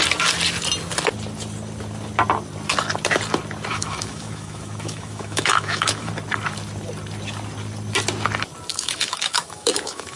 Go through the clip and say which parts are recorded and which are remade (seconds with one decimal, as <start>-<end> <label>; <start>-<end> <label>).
0.0-3.7 recorded; 3.7-6.1 remade; 6.1-8.7 recorded; 8.7-10.2 remade